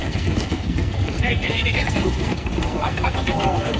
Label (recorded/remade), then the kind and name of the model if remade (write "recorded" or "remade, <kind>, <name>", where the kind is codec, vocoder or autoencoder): remade, codec, SNAC